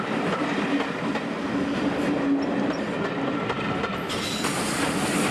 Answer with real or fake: real